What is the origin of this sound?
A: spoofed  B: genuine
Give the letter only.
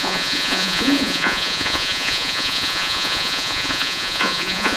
A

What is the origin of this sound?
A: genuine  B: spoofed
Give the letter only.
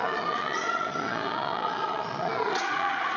B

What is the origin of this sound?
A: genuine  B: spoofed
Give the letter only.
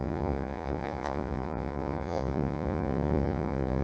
B